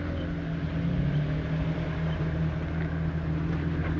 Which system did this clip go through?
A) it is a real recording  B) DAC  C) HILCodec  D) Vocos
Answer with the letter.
A